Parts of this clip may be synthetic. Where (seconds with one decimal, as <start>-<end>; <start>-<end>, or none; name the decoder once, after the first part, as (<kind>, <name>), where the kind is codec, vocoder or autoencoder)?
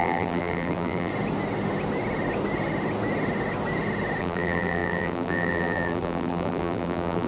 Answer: 0.0-1.1 (vocoder, BigVGAN v2); 4.2-7.3